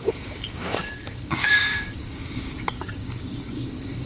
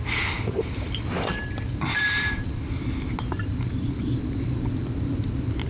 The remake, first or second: first